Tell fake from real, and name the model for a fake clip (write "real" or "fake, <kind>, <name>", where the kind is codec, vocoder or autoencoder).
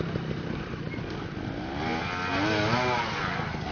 real